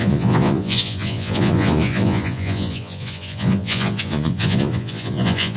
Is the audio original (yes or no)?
no